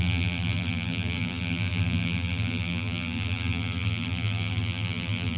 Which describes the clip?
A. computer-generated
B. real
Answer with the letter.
A